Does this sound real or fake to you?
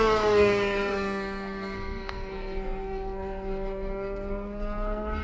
fake